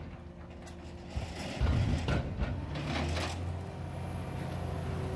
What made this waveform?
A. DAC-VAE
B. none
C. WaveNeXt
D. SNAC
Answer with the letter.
B